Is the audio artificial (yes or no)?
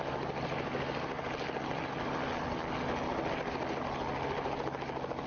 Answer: no